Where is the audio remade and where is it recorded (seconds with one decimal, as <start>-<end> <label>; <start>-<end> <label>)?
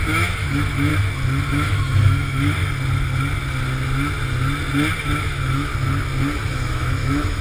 0.0-0.9 remade; 0.9-1.5 recorded; 1.5-2.6 remade; 2.6-5.0 recorded; 5.0-5.7 remade; 5.7-6.5 recorded; 6.5-7.4 remade